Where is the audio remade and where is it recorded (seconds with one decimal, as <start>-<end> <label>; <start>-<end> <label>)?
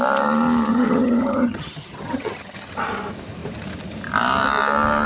0.0-0.7 recorded; 0.7-2.7 remade; 2.7-5.1 recorded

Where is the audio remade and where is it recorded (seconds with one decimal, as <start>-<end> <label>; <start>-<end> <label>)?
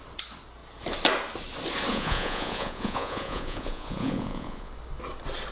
0.0-1.9 recorded; 1.9-4.7 remade; 4.7-5.5 recorded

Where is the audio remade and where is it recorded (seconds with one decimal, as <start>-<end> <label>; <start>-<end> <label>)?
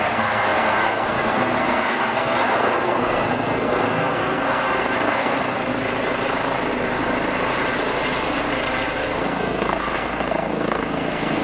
0.0-5.6 remade; 5.6-9.2 recorded; 9.2-11.4 remade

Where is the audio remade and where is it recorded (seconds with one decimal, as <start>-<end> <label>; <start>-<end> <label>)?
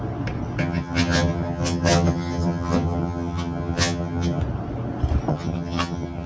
0.0-0.6 recorded; 0.6-4.4 remade; 4.4-5.3 recorded; 5.3-6.3 remade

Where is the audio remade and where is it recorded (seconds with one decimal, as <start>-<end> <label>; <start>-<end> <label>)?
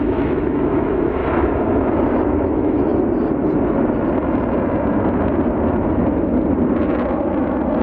0.0-1.2 remade; 1.2-2.4 recorded; 2.4-2.9 remade; 2.9-7.8 recorded